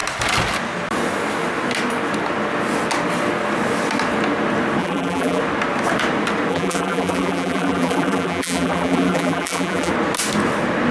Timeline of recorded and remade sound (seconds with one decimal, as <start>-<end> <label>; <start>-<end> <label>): 0.0-4.8 recorded; 4.8-5.4 remade; 5.4-6.5 recorded; 6.5-9.9 remade; 9.9-10.9 recorded